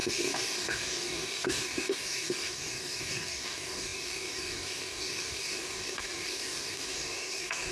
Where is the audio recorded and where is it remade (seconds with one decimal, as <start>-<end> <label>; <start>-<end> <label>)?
0.0-7.7 remade